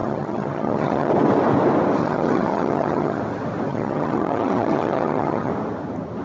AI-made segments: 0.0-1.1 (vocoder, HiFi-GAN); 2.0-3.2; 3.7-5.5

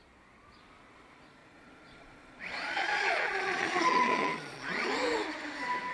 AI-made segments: 1.4-4.9 (vocoder, Vocos)